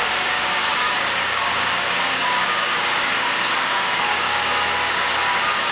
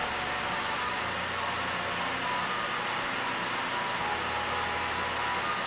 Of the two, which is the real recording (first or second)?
second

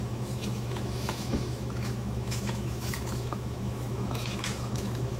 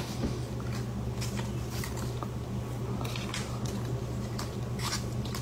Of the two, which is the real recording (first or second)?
second